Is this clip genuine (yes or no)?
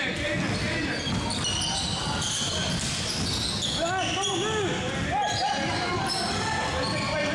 yes